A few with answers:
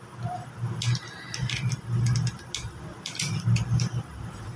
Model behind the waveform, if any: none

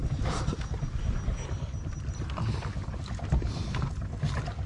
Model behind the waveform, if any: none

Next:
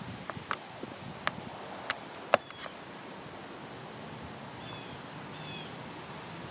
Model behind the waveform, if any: none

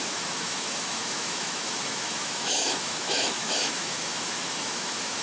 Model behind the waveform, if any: autoencoder, DAC-VAE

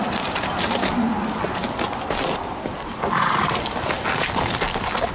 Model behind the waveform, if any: none